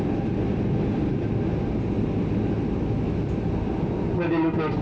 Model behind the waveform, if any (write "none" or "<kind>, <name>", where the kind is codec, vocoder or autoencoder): none